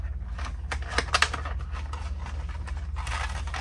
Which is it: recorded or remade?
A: recorded